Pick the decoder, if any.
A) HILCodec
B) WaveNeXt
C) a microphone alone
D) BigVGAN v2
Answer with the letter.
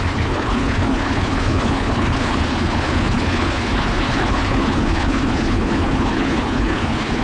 A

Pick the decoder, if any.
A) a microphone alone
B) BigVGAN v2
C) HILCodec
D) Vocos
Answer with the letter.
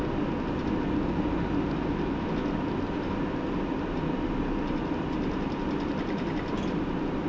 A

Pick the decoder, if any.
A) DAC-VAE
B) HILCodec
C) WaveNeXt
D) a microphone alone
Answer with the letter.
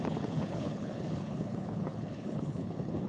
B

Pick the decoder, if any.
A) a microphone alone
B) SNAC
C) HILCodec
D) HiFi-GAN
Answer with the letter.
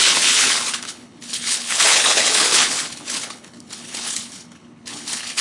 C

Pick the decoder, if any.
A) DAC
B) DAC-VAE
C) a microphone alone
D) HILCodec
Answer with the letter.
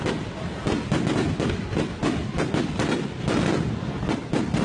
C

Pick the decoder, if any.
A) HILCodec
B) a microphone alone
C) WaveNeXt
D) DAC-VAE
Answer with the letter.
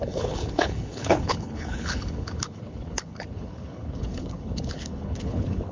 A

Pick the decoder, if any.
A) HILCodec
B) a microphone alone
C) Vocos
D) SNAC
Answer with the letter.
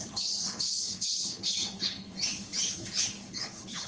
A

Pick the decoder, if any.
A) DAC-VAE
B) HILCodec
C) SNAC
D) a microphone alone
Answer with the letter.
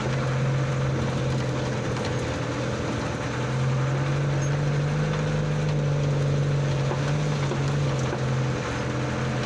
D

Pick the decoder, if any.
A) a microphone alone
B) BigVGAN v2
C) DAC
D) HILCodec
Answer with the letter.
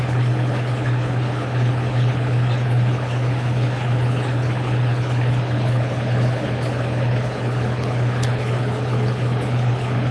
D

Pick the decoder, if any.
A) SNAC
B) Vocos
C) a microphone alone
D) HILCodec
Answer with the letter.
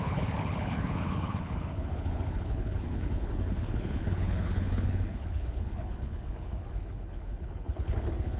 D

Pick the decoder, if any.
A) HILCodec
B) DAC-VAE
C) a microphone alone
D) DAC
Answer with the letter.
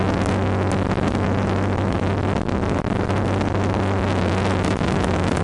C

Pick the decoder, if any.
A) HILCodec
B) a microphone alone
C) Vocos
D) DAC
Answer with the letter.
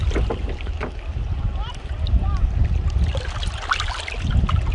B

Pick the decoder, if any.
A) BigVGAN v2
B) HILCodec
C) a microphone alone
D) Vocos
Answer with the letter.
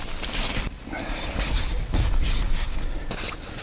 C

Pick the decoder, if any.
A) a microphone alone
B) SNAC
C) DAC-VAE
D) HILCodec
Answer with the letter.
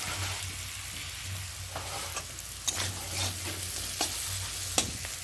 A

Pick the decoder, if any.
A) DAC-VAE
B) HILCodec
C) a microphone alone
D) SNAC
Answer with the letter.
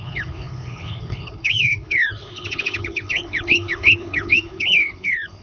B